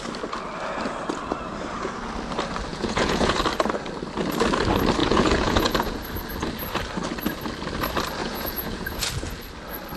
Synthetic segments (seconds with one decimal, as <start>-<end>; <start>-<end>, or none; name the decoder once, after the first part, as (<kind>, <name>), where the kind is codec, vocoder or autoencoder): 2.7-3.4 (vocoder, Vocos); 5.0-6.0; 8.2-9.1

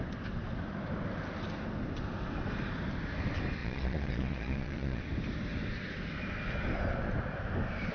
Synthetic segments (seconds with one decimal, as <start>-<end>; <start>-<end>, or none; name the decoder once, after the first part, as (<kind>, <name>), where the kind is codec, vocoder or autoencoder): 3.6-5.0 (vocoder, Vocos)

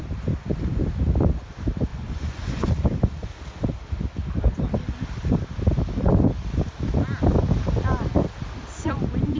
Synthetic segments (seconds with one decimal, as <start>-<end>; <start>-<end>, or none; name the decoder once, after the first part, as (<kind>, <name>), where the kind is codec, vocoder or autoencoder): 1.9-2.7 (vocoder, Vocos)

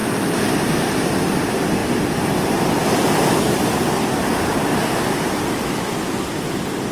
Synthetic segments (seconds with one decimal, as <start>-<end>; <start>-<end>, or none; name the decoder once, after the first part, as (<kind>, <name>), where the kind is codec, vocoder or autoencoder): none

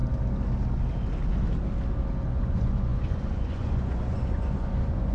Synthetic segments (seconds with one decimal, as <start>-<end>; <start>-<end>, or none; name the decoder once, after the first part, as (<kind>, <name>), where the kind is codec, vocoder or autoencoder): 2.3-5.1 (vocoder, Vocos)